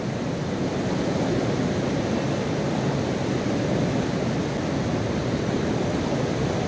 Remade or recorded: recorded